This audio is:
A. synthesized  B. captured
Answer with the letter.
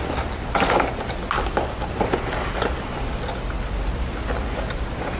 B